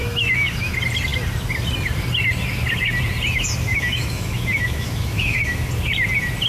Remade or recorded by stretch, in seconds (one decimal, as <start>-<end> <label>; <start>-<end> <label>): 0.0-0.7 remade; 0.7-3.7 recorded; 3.7-5.7 remade; 5.7-6.5 recorded